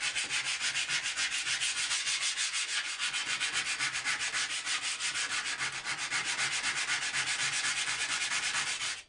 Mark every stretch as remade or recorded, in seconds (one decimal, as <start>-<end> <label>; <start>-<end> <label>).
0.0-0.5 recorded; 0.5-3.6 remade; 3.6-7.4 recorded; 7.4-8.2 remade; 8.2-9.1 recorded